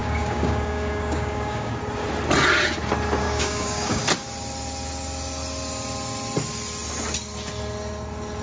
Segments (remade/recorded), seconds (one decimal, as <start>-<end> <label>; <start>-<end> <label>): 0.0-1.7 remade; 1.7-3.2 recorded; 3.2-4.0 remade; 4.0-8.4 recorded